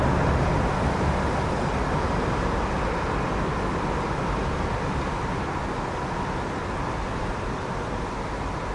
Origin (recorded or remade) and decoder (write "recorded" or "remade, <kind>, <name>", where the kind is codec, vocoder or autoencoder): recorded